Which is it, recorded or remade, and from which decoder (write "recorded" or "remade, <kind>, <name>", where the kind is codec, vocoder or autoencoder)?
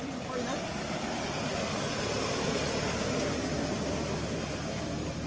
recorded